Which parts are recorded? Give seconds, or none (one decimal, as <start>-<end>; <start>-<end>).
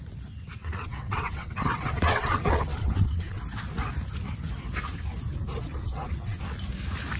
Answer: 0.0-0.6; 3.4-5.7; 6.4-7.2